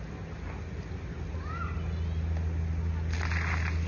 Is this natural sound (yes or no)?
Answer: yes